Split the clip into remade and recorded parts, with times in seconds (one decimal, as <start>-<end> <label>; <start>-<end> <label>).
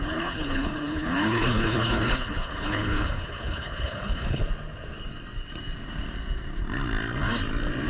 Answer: 0.0-4.4 remade; 4.4-7.9 recorded